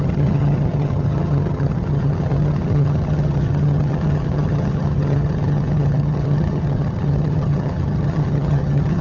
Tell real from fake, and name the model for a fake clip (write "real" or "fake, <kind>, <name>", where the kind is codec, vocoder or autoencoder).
fake, vocoder, HiFi-GAN